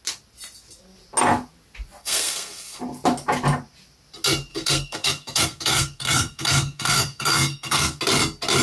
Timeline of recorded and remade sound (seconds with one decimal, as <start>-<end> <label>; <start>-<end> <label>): 0.0-2.0 recorded; 2.0-2.8 remade; 2.8-4.5 recorded; 4.5-8.0 remade; 8.0-8.6 recorded